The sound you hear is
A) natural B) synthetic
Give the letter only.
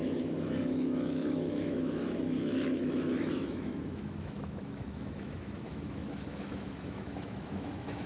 B